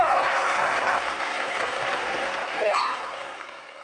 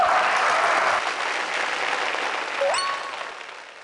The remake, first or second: first